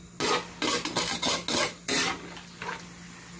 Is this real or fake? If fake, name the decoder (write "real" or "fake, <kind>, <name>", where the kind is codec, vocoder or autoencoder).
real